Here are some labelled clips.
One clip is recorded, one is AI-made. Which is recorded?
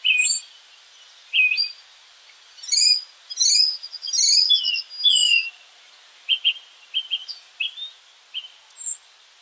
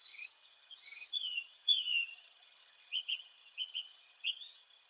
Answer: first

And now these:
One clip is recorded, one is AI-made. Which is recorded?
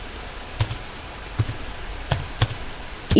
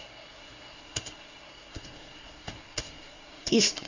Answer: first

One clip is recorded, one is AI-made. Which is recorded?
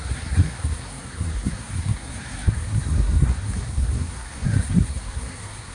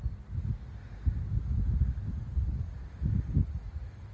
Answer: second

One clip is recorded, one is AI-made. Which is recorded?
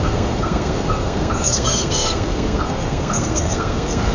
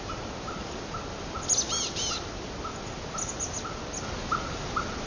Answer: second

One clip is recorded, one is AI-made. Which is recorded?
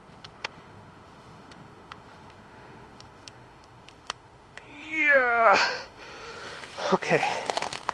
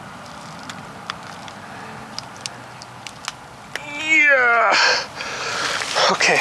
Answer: second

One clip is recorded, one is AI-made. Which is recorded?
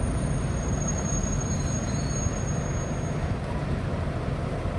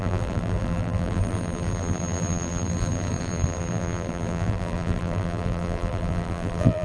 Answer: first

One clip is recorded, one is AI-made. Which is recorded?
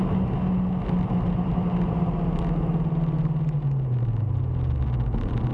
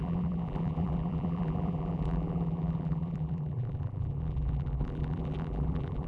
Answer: first